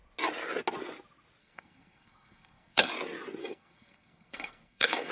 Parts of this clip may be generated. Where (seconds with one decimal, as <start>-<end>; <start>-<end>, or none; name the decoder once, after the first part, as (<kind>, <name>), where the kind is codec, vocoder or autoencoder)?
1.4-2.9 (codec, SNAC); 3.4-5.1